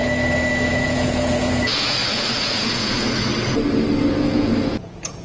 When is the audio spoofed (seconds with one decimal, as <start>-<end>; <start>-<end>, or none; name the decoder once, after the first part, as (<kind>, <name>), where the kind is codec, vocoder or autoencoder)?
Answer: 0.7-3.3 (vocoder, Vocos); 4.2-5.2